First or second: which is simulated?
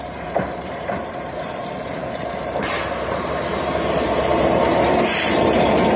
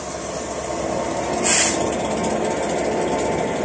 first